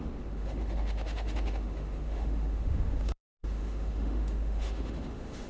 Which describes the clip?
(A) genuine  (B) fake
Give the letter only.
B